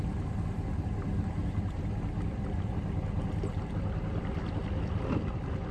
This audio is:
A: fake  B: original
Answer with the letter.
A